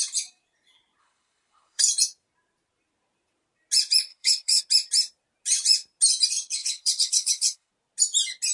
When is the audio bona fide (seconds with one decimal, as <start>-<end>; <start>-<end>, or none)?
0.0-1.0; 1.8-4.1; 4.6-6.6; 7.7-8.5